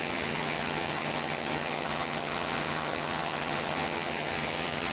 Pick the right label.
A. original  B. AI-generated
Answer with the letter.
B